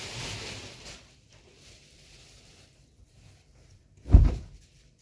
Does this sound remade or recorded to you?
remade